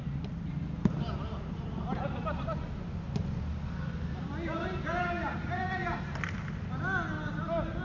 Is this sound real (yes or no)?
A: yes